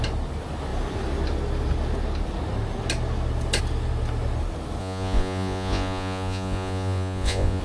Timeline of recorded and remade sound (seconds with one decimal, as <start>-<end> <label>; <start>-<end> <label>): 0.0-4.8 recorded; 4.8-7.6 remade